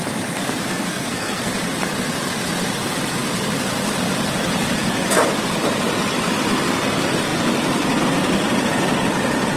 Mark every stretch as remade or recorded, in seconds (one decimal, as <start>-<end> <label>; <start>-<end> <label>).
0.0-0.7 recorded; 0.7-1.5 remade; 1.5-9.6 recorded